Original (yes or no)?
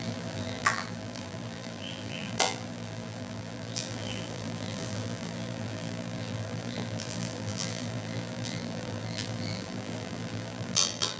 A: no